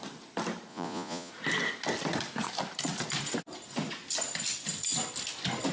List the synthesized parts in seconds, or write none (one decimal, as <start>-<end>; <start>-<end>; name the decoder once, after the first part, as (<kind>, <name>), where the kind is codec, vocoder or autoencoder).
0.7-1.3 (vocoder, Vocos)